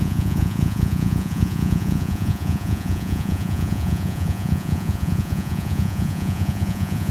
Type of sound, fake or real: fake